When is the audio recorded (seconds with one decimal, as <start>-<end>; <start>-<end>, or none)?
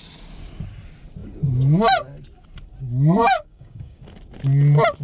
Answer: 0.0-3.2; 4.0-5.0